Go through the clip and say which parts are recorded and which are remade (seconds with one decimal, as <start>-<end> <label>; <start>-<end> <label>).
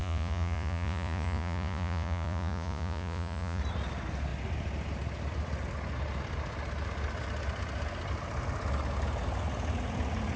0.0-3.6 remade; 3.6-10.4 recorded